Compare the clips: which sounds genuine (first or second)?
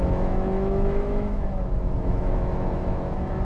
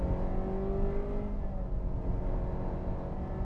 second